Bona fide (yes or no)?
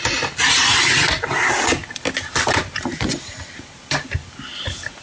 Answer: yes